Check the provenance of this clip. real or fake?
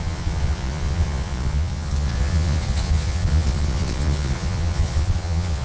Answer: fake